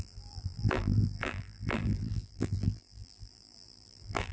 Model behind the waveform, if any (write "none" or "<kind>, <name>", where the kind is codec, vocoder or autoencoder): vocoder, BigVGAN v2